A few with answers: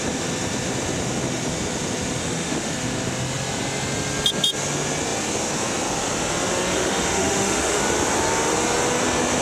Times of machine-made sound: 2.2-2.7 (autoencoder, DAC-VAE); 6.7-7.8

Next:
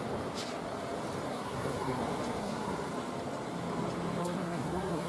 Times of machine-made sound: 1.3-2.0 (codec, SNAC); 2.4-2.9; 4.2-5.1